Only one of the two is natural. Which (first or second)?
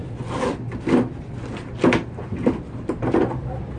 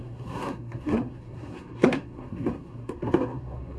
first